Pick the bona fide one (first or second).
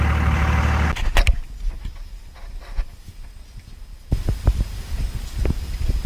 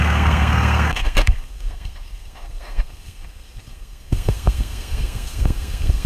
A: first